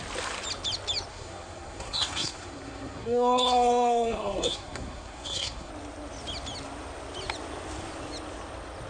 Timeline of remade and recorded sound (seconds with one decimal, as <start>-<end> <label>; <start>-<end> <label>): 0.0-1.1 recorded; 1.1-5.7 remade; 5.7-8.9 recorded